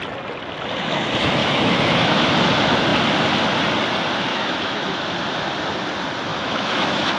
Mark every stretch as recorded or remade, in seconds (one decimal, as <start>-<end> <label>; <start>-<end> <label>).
0.0-1.4 recorded; 1.4-2.3 remade; 2.3-4.3 recorded; 4.3-5.0 remade; 5.0-6.3 recorded; 6.3-7.2 remade